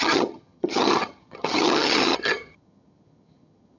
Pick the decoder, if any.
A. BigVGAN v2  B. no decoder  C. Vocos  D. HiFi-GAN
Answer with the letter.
D